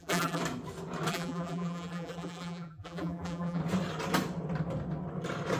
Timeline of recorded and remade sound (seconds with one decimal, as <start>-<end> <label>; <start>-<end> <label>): 0.0-0.4 remade; 0.4-1.1 recorded; 1.1-3.6 remade; 3.6-5.6 recorded